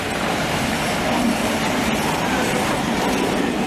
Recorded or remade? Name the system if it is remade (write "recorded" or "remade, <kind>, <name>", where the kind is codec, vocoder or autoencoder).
recorded